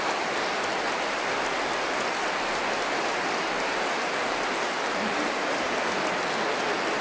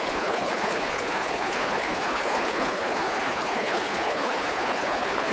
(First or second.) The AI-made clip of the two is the second